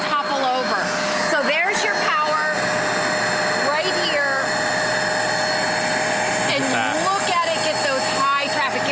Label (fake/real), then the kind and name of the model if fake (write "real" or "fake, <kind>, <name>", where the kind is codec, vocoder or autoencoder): real